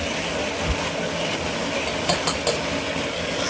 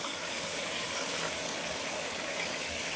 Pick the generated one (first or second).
second